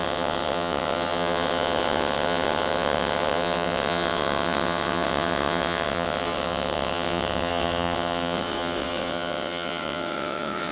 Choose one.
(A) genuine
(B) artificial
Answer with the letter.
B